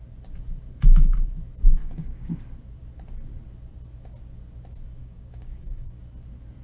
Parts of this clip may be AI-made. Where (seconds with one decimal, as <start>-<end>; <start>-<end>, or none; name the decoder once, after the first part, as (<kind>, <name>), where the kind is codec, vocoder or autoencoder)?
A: 1.8-2.3 (codec, DAC); 5.0-6.0

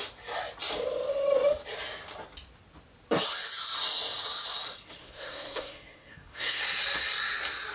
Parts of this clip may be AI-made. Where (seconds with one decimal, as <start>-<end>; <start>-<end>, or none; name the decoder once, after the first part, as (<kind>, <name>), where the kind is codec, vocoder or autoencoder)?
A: 5.0-6.6 (codec, SNAC)

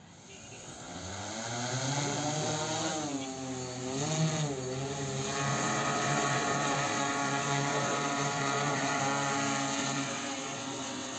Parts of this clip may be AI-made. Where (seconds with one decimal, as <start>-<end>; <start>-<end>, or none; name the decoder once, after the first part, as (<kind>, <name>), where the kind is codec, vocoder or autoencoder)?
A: 0.5-1.3 (vocoder, WaveNeXt); 5.5-9.0; 9.8-11.2

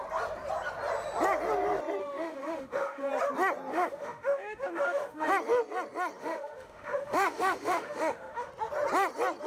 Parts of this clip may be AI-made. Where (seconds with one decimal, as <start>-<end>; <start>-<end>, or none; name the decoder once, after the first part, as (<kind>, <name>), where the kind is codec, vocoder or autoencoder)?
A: 2.0-3.1 (autoencoder, DAC-VAE); 3.7-5.3; 6.2-8.5